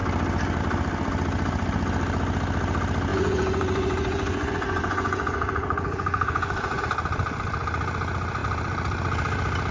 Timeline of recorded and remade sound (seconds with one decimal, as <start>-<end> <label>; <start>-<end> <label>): 0.0-3.1 recorded; 3.1-6.8 remade; 6.8-9.7 recorded